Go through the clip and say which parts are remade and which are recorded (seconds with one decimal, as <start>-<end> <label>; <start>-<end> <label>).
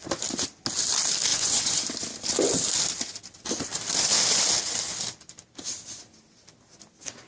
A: 0.0-1.3 recorded; 1.3-1.8 remade; 1.8-7.3 recorded